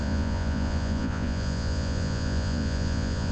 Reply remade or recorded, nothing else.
remade